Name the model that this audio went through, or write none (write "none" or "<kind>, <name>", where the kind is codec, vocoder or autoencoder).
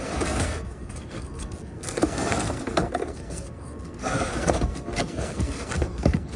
codec, SNAC